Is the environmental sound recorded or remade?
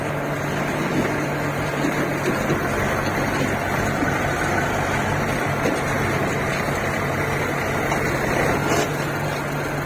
recorded